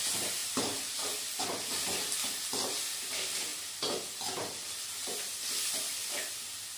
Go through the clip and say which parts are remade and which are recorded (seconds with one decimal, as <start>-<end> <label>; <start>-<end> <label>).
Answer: 0.0-0.4 recorded; 0.4-1.4 remade; 1.4-6.8 recorded